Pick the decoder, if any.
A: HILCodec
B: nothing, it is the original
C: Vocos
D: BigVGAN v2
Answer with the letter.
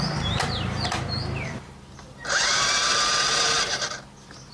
D